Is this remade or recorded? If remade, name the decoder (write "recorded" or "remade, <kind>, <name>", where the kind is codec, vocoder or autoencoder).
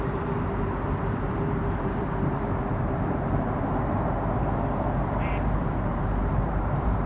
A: remade, vocoder, BigVGAN v2